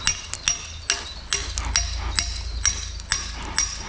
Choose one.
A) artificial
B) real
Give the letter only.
B